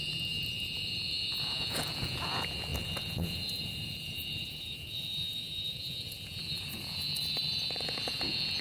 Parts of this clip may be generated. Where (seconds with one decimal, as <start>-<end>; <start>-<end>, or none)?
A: 0.0-8.6